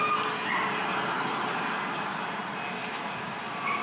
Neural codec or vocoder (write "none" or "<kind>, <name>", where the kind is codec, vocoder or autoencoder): none